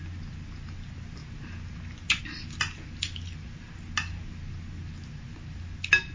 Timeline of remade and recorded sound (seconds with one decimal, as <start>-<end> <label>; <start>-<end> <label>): 0.0-6.1 recorded